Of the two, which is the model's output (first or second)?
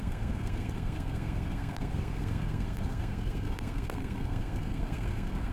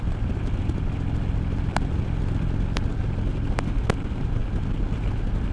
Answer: first